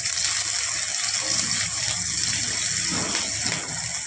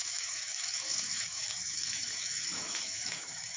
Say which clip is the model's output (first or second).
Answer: second